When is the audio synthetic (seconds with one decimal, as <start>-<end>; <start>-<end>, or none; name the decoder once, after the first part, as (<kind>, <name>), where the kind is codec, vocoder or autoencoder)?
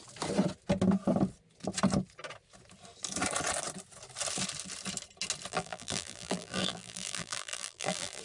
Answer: 5.5-8.2 (vocoder, BigVGAN v2)